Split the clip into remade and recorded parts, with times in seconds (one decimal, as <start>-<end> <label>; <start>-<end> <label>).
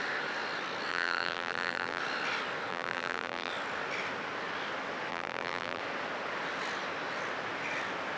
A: 0.0-0.9 recorded; 0.9-2.0 remade; 2.0-2.7 recorded; 2.7-3.5 remade; 3.5-5.1 recorded; 5.1-5.8 remade; 5.8-8.2 recorded